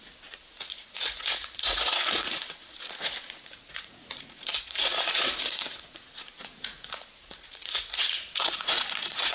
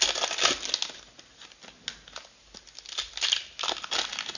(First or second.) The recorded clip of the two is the second